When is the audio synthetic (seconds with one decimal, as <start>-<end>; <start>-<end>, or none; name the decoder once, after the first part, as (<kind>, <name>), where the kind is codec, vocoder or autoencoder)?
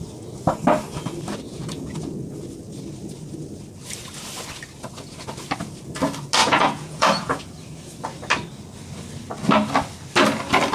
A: 1.5-2.1 (vocoder, Vocos); 6.4-7.4